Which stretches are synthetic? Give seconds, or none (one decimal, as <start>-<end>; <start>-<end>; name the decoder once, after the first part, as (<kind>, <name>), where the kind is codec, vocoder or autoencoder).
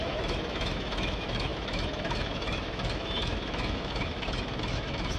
0.0-5.2 (autoencoder, DAC-VAE)